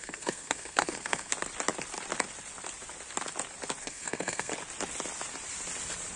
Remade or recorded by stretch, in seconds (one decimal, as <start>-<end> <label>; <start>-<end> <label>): 0.0-1.3 remade; 1.3-3.8 recorded; 3.8-4.5 remade; 4.5-6.2 recorded